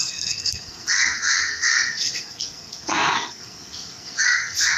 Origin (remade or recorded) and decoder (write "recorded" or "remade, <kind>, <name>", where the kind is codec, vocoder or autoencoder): remade, codec, SNAC